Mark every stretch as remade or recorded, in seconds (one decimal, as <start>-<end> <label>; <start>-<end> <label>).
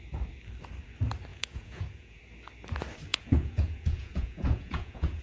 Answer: 0.0-1.3 recorded; 1.3-2.2 remade; 2.2-3.1 recorded; 3.1-5.2 remade